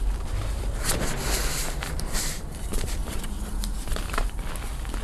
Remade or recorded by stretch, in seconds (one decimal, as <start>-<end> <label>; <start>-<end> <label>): 0.0-1.4 recorded; 1.4-4.4 remade; 4.4-5.0 recorded

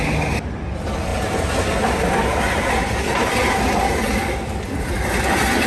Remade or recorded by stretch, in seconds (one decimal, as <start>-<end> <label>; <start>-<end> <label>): 0.0-5.7 recorded

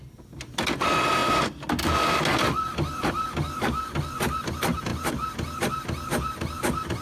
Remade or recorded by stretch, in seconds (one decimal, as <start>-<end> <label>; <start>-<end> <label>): 0.0-7.0 recorded

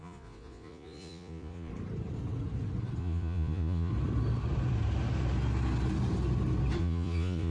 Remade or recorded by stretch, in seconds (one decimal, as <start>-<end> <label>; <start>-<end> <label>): 0.0-1.7 remade; 1.7-3.0 recorded; 3.0-3.9 remade; 3.9-6.8 recorded; 6.8-7.5 remade

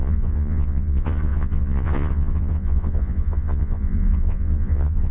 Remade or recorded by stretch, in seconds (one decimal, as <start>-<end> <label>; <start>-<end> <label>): 0.0-5.1 remade

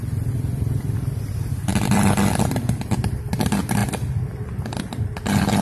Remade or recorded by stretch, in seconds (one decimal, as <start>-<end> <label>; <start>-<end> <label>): 0.0-1.7 recorded; 1.7-3.4 remade; 3.4-5.6 recorded